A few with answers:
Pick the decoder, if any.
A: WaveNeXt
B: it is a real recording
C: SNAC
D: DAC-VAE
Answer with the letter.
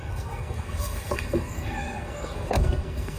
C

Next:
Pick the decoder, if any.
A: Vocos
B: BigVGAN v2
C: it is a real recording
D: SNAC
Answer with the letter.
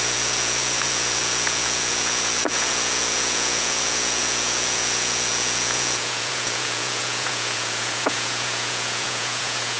A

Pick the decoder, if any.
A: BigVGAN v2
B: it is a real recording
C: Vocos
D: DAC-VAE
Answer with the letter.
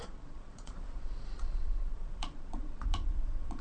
C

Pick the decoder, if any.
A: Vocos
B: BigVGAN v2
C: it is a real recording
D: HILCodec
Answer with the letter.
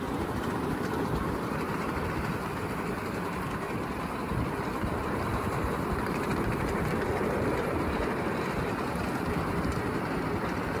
B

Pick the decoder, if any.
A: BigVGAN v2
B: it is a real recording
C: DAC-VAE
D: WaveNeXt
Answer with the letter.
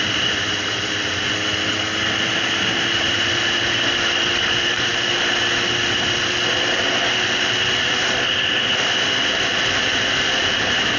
B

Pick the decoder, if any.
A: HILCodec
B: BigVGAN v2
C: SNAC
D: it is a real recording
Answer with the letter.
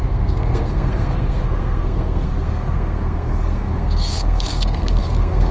C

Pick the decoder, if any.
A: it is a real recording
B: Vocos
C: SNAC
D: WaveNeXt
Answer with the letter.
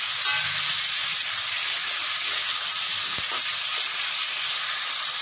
A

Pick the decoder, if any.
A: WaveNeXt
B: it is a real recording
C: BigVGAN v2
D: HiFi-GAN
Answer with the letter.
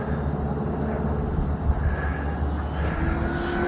B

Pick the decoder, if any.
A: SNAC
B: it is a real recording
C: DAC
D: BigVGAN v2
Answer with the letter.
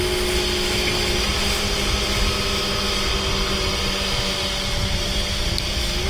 B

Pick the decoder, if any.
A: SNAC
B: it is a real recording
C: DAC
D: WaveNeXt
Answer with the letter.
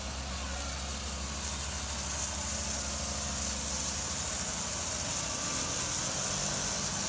B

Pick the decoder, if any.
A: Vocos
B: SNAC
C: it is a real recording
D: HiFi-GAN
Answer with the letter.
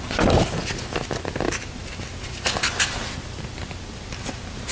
C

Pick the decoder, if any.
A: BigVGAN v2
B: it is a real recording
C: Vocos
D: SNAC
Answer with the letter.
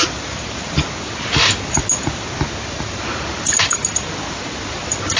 B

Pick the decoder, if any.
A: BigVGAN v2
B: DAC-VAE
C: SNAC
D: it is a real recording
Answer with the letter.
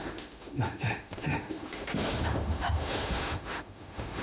B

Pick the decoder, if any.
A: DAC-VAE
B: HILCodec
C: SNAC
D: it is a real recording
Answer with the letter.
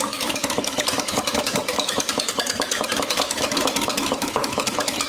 A